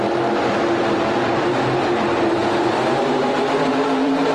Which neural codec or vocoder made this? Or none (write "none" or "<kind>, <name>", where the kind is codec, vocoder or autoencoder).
vocoder, BigVGAN v2